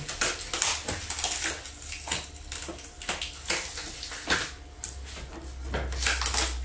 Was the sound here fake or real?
real